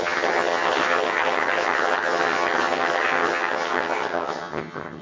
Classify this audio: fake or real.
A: fake